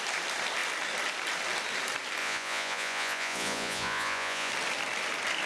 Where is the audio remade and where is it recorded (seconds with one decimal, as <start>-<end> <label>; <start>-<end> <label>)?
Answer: 0.0-2.2 recorded; 2.2-4.5 remade; 4.5-5.5 recorded